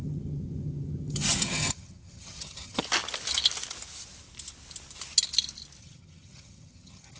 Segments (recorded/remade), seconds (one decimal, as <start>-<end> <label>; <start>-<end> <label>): 0.0-2.8 remade; 2.8-5.8 recorded; 5.8-7.2 remade